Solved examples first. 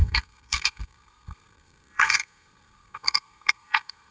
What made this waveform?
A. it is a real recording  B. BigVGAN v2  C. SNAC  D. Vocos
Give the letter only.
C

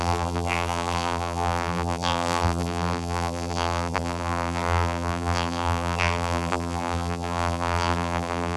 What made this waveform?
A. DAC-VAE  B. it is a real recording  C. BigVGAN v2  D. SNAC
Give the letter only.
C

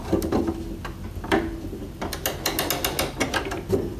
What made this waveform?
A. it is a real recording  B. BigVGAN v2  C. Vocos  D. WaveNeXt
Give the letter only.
A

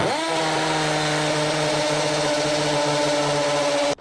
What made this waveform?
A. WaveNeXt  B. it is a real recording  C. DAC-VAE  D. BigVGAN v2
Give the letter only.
B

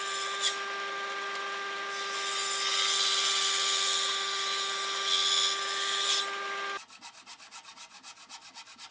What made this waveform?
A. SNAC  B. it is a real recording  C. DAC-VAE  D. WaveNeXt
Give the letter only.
B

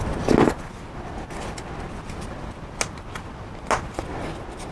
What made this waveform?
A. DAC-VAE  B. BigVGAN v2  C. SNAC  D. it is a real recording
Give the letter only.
D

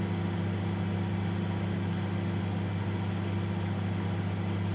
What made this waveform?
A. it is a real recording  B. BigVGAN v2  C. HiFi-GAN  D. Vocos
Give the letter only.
A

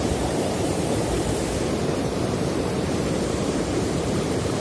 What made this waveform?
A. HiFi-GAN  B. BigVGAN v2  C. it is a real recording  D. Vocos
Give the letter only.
B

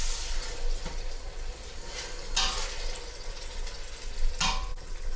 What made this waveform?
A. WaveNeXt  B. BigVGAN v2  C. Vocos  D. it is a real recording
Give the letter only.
D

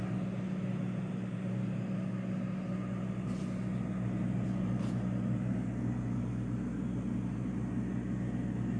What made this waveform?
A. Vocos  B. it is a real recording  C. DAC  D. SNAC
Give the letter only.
B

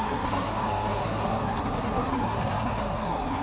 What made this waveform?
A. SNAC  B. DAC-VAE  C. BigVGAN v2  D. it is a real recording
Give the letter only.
A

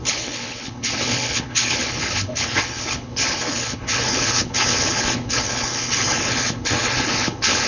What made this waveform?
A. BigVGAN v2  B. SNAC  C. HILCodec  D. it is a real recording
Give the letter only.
C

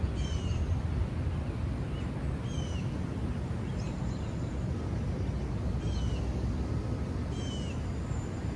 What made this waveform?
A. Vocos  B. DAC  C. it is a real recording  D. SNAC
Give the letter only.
C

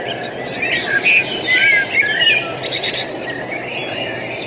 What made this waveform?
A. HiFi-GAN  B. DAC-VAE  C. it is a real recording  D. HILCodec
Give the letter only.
C